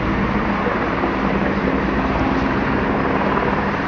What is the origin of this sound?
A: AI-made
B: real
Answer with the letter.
B